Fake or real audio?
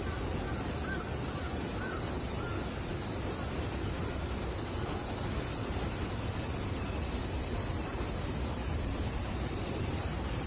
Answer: real